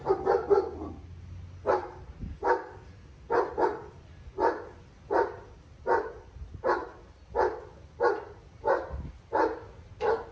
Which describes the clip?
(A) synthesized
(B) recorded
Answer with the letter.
B